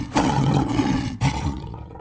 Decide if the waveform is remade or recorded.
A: remade